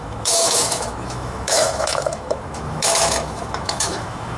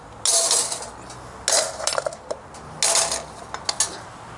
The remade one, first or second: first